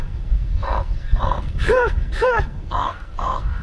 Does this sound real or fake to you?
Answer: fake